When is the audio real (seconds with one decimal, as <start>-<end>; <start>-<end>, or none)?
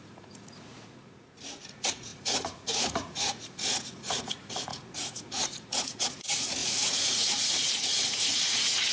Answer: none